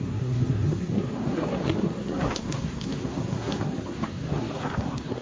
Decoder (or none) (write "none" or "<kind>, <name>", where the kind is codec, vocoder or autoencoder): codec, SNAC